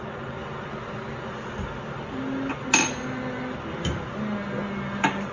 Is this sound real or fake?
real